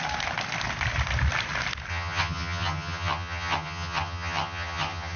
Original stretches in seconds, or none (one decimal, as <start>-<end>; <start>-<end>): 0.0-1.9